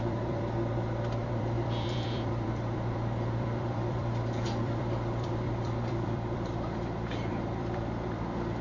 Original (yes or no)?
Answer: no